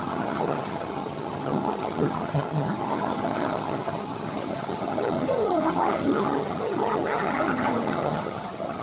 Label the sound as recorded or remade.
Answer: remade